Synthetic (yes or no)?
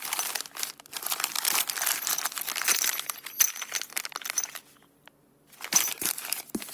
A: no